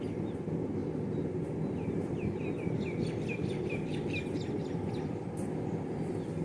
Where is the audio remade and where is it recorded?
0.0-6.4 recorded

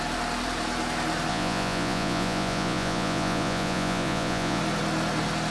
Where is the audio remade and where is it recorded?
0.0-1.3 recorded; 1.3-4.6 remade; 4.6-5.5 recorded

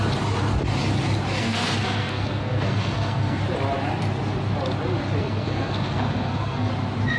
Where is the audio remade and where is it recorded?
0.0-1.4 recorded; 1.4-3.4 remade; 3.4-5.2 recorded; 5.2-6.7 remade; 6.7-7.2 recorded

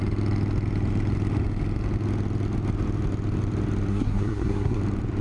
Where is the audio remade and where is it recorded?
0.0-3.9 recorded; 3.9-4.8 remade; 4.8-5.2 recorded

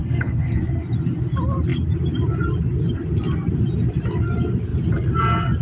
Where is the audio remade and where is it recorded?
0.0-0.7 remade; 0.7-5.6 recorded

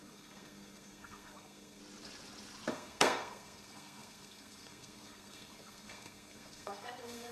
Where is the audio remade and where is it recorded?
0.0-1.8 remade; 1.8-2.7 recorded; 2.7-7.3 remade

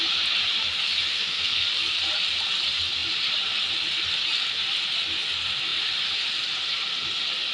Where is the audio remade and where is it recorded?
0.0-1.1 recorded; 1.1-1.7 remade; 1.7-7.5 recorded

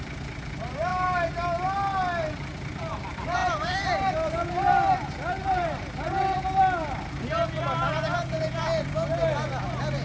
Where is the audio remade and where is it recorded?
0.0-3.4 recorded; 3.4-4.9 remade; 4.9-5.4 recorded; 5.4-6.6 remade; 6.6-10.0 recorded